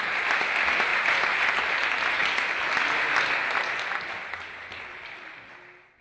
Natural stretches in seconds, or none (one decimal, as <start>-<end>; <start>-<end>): 0.0-6.0

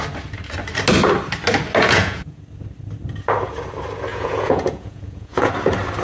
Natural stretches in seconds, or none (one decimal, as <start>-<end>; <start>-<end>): 0.0-1.8; 2.4-4.1; 5.5-6.0

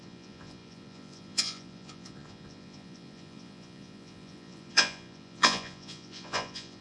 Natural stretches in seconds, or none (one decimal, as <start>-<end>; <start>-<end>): none

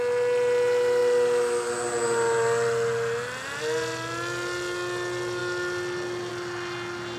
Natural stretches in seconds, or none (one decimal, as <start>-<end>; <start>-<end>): 0.0-7.2